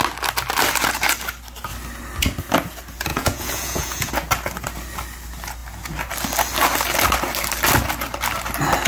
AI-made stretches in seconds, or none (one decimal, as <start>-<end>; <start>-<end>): 3.1-4.1